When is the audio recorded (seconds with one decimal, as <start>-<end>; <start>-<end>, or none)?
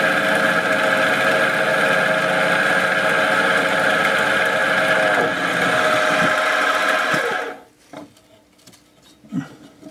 0.0-9.9